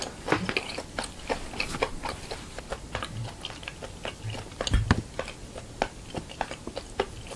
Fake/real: real